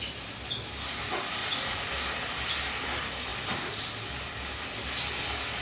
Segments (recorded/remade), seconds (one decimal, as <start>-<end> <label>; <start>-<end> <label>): 0.0-1.4 recorded; 1.4-1.9 remade; 1.9-5.6 recorded